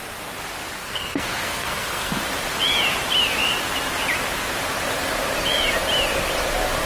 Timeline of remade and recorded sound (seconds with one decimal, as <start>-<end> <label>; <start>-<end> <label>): 0.0-0.8 recorded; 0.8-2.2 remade; 2.2-6.9 recorded